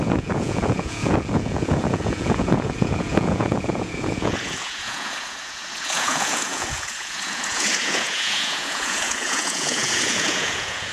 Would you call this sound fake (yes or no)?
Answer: yes